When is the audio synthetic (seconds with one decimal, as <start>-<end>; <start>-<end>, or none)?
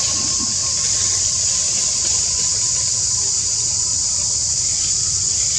none